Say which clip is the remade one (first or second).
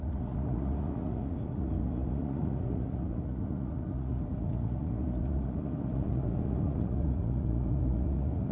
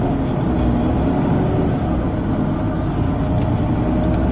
first